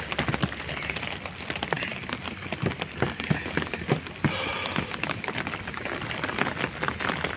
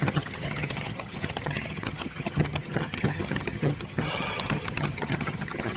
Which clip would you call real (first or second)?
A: first